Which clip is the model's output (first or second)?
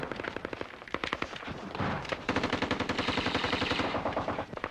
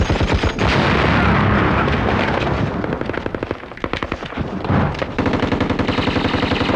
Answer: first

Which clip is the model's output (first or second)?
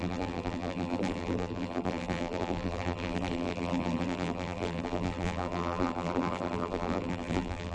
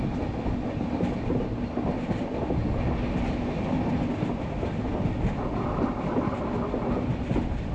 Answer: first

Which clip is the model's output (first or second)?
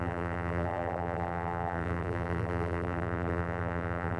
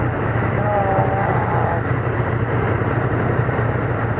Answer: first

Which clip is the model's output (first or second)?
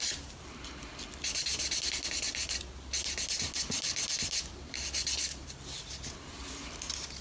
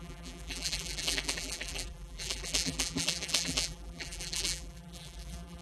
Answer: second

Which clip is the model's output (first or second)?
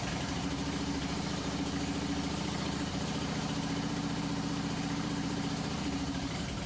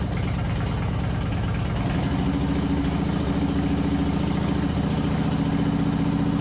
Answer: first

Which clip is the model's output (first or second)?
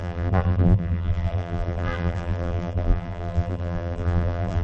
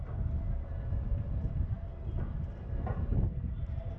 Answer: first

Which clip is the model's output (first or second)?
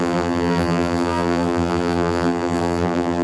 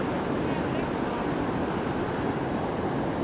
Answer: first